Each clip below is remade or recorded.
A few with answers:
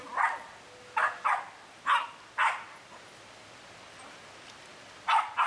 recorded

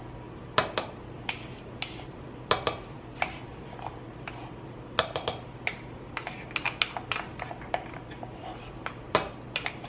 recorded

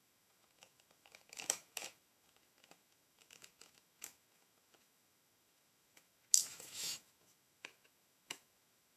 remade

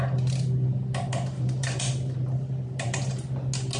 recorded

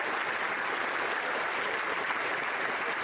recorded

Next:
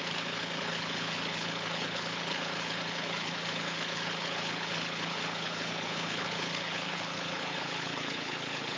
remade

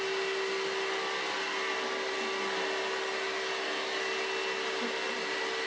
recorded